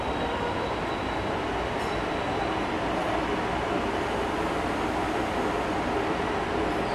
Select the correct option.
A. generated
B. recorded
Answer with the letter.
B